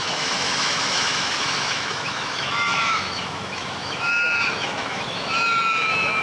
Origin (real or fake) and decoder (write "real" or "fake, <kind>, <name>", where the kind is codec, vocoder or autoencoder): fake, autoencoder, DAC-VAE